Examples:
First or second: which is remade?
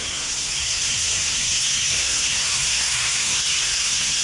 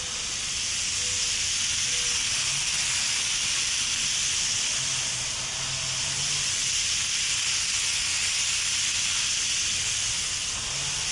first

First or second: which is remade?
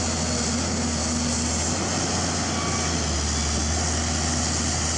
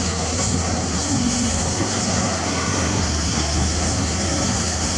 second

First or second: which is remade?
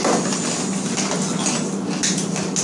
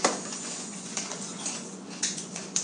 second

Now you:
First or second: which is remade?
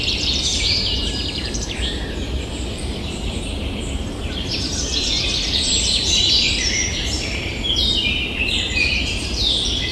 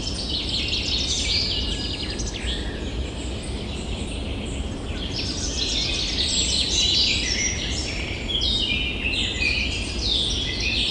first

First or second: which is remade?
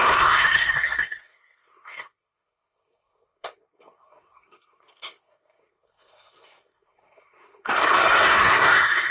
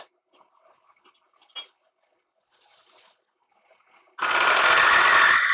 first